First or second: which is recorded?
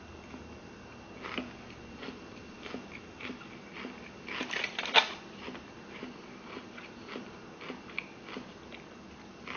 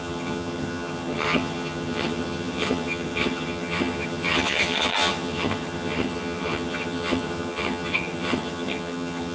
first